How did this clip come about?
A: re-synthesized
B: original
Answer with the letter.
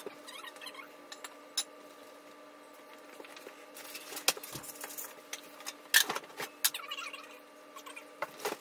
B